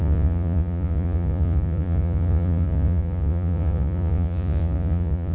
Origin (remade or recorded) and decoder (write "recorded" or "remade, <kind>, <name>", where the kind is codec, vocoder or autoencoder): remade, vocoder, Vocos